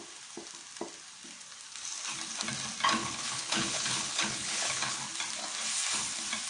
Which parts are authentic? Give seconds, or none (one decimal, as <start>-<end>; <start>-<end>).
0.0-3.0; 5.0-6.5